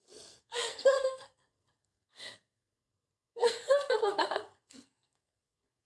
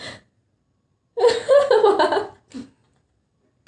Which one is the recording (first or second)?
second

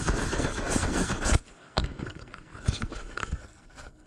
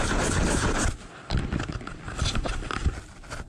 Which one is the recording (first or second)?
second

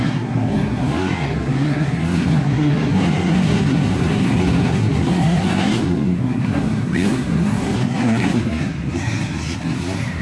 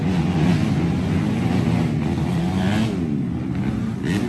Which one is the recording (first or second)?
second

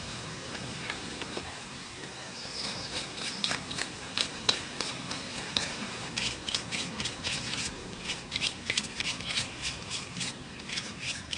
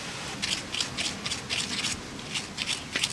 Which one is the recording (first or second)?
second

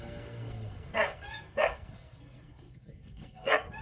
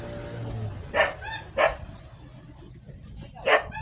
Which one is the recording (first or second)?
second